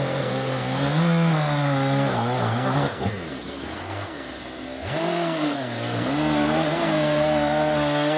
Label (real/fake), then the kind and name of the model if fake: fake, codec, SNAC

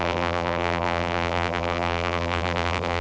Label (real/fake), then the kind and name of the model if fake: fake, vocoder, BigVGAN v2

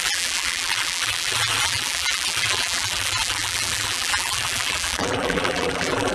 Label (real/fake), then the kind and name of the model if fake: fake, vocoder, BigVGAN v2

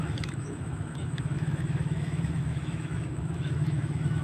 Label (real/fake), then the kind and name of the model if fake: fake, autoencoder, DAC-VAE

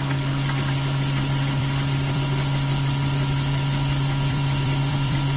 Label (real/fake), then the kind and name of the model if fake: fake, vocoder, BigVGAN v2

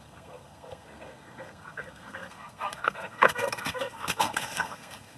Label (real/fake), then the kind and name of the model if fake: fake, codec, SNAC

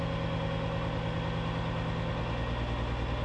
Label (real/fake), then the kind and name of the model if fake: real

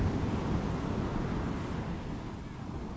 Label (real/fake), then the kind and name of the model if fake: real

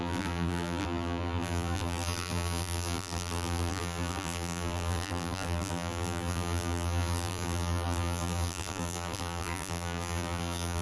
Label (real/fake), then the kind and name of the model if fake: fake, vocoder, BigVGAN v2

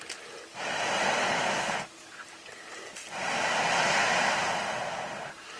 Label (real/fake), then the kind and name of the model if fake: real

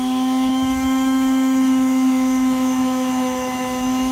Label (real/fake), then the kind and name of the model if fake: fake, autoencoder, DAC-VAE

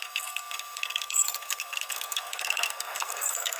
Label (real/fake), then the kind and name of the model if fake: fake, codec, SNAC